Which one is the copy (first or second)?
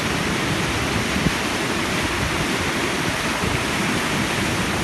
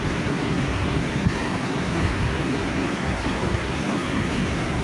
second